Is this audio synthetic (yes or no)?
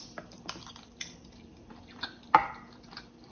yes